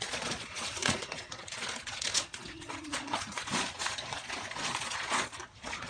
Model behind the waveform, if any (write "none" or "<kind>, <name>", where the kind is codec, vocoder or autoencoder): vocoder, Vocos